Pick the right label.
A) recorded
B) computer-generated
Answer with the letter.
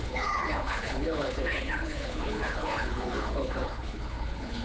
B